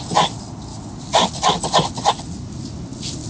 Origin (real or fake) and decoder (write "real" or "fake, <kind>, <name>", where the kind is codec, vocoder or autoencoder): real